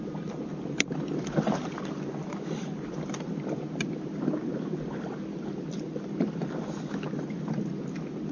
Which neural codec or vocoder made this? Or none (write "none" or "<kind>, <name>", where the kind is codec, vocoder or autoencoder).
none